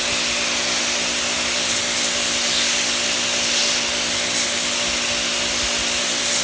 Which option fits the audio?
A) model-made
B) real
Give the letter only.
B